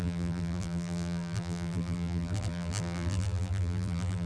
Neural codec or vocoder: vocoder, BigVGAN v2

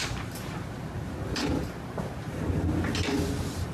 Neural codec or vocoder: none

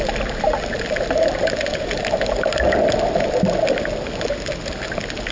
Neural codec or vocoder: none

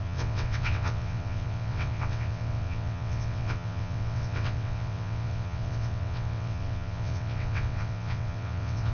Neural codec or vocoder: vocoder, WaveNeXt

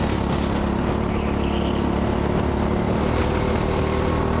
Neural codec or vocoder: none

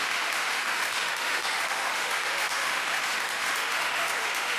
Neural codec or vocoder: autoencoder, DAC-VAE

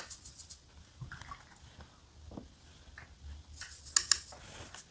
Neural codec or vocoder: none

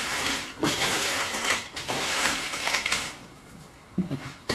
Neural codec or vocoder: codec, SNAC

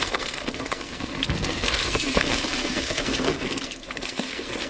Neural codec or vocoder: codec, SNAC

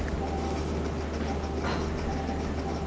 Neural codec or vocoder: none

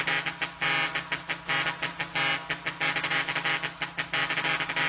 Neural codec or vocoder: none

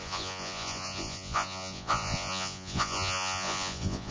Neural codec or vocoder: vocoder, Vocos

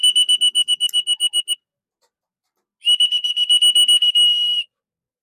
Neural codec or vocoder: none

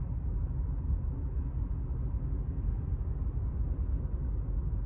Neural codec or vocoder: none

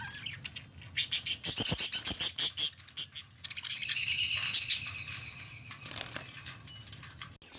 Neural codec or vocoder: none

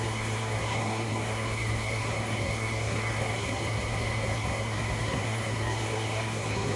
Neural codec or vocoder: codec, SNAC